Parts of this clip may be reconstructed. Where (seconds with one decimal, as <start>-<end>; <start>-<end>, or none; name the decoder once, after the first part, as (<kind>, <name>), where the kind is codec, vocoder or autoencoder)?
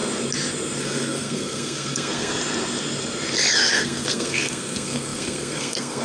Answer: 0.8-2.4 (codec, SNAC); 3.7-6.0